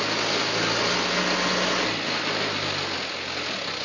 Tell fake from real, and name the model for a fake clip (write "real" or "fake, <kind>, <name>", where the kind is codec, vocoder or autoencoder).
real